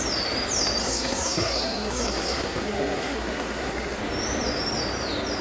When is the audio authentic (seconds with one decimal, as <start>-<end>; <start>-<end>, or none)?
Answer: 0.0-0.8; 4.0-5.4